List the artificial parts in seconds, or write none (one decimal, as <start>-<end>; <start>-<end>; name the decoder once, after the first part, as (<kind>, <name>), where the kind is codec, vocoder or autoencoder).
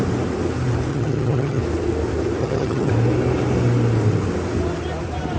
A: 0.9-1.6 (vocoder, HiFi-GAN); 2.4-2.9